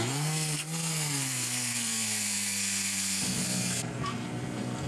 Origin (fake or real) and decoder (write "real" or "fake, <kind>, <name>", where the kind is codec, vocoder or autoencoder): fake, codec, SNAC